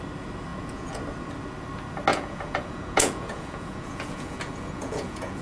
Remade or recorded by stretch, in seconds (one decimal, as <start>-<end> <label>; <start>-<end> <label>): 0.0-0.5 recorded; 0.5-1.0 remade; 1.0-2.1 recorded; 2.1-5.4 remade